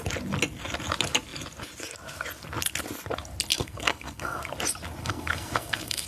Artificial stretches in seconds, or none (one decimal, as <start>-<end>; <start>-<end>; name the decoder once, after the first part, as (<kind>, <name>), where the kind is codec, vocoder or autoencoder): 3.5-4.4 (codec, SNAC); 5.0-6.1